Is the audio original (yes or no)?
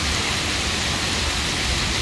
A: yes